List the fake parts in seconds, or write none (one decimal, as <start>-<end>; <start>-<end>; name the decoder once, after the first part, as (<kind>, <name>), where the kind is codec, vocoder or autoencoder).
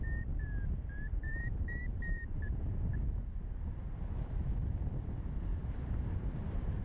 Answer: 1.3-2.7 (vocoder, BigVGAN v2)